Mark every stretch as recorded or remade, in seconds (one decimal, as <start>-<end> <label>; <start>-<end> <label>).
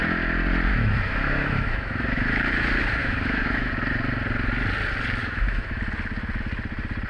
0.0-0.7 recorded; 0.7-2.5 remade; 2.5-3.0 recorded; 3.0-3.7 remade; 3.7-5.2 recorded; 5.2-5.8 remade; 5.8-7.1 recorded